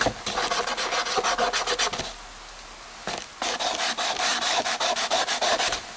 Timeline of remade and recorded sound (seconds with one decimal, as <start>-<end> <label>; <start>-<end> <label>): 0.0-4.3 recorded; 4.3-4.9 remade; 4.9-6.0 recorded